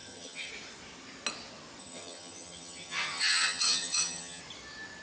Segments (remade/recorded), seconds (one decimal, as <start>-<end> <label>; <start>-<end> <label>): 0.0-0.5 remade; 0.5-1.8 recorded; 1.8-4.4 remade; 4.4-5.0 recorded